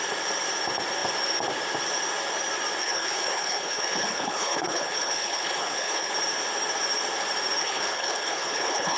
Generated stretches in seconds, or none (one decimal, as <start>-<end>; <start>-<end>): 2.8-6.1; 7.6-9.0

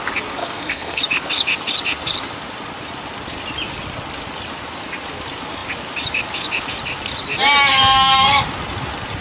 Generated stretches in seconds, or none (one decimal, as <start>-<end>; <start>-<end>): 0.4-1.0; 7.7-8.4

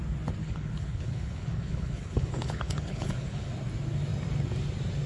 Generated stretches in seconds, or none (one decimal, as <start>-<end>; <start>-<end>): 0.4-3.5

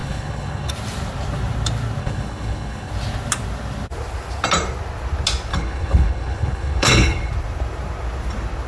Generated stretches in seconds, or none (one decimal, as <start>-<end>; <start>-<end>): 0.0-0.7; 2.0-2.9; 5.5-7.3

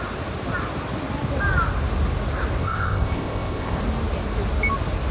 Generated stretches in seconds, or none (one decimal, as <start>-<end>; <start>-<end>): 2.6-3.8

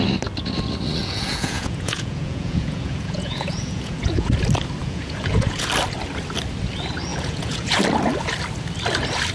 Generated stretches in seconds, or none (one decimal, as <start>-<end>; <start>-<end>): 1.0-4.3; 4.8-5.7; 7.1-7.8

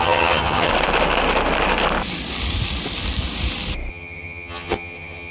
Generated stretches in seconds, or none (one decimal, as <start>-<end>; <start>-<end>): 0.0-0.7; 3.9-5.3